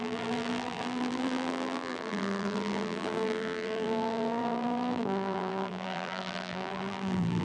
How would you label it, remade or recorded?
remade